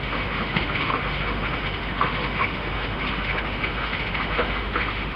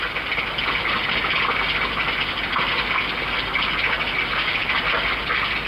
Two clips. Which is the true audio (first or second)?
second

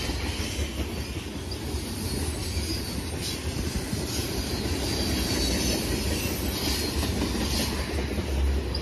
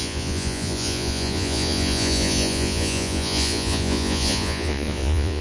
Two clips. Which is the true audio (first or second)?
first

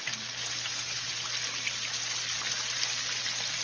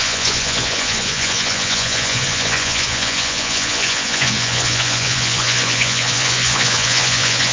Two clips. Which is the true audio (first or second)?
first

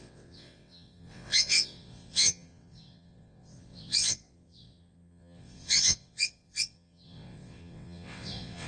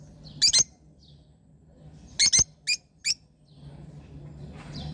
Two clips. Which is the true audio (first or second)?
second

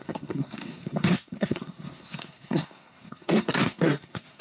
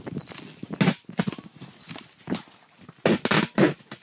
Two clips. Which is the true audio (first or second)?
second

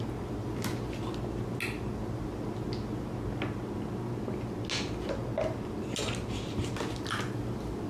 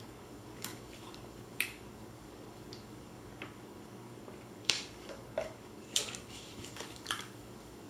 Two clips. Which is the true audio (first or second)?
first